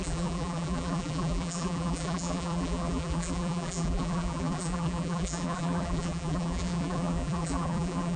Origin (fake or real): fake